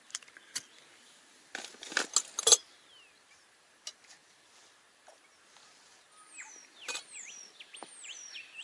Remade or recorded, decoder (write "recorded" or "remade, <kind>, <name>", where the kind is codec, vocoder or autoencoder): recorded